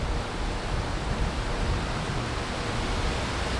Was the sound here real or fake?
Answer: real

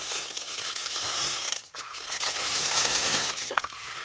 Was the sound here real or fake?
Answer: fake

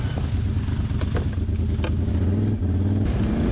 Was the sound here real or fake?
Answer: real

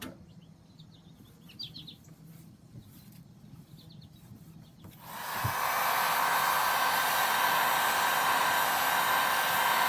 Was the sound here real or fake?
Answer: real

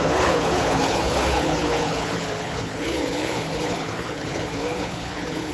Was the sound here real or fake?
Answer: fake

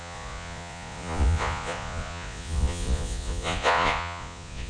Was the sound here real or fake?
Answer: fake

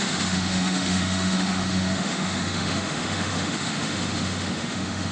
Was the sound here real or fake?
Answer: fake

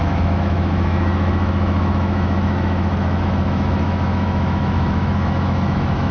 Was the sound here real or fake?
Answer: fake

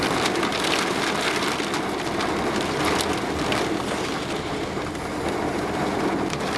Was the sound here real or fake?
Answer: real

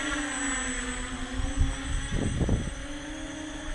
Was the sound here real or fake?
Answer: real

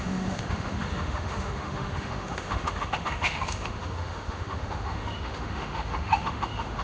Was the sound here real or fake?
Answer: fake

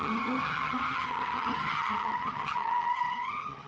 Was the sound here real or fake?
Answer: fake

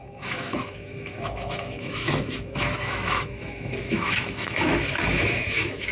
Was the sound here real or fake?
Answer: fake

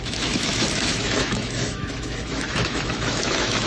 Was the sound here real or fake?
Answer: fake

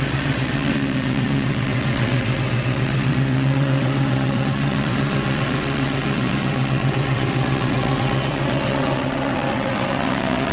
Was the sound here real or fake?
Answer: fake